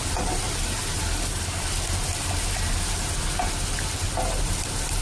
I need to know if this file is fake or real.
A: real